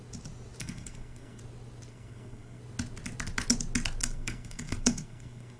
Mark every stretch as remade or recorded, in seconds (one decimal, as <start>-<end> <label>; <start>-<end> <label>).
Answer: 0.0-0.6 recorded; 0.6-1.4 remade; 1.4-1.9 recorded; 1.9-2.6 remade; 2.6-4.0 recorded; 4.0-5.6 remade